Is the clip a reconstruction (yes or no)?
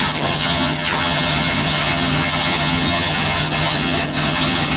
yes